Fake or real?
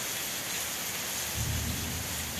real